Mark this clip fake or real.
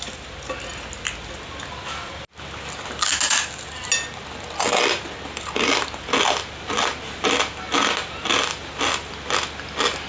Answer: real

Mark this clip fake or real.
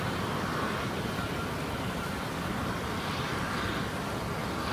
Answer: real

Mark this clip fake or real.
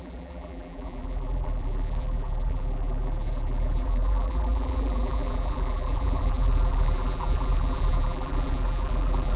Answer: fake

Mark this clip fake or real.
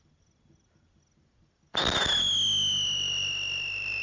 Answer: real